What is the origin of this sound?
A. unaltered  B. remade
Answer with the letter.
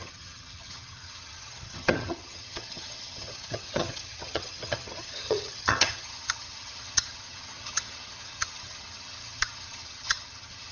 B